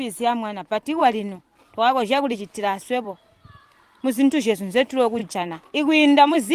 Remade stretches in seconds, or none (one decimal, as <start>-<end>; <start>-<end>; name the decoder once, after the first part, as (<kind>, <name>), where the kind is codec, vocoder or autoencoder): 1.0-4.3 (vocoder, BigVGAN v2); 5.2-6.5